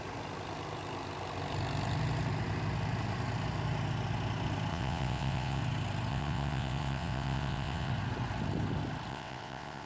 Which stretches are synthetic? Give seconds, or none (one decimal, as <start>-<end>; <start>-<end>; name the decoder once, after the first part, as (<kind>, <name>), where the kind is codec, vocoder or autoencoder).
4.7-5.6 (vocoder, WaveNeXt); 6.1-7.9; 9.1-9.9